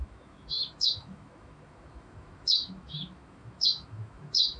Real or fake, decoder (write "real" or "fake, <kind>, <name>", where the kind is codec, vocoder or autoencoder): fake, autoencoder, DAC-VAE